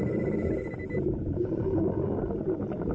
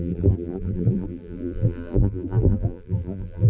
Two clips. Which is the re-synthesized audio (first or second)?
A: second